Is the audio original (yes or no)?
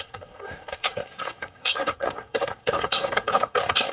no